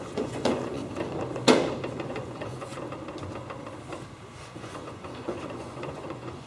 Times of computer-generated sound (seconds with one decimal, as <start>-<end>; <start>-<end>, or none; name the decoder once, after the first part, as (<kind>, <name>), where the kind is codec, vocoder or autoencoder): 0.0-0.8 (vocoder, Vocos); 1.9-2.7; 4.4-6.5